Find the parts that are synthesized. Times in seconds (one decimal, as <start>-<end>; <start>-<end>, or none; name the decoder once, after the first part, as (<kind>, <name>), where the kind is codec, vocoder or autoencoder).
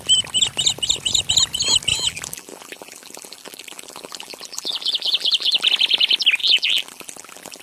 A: 1.9-5.7 (vocoder, BigVGAN v2); 6.4-7.6